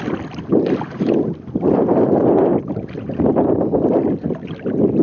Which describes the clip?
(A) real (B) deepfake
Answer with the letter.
A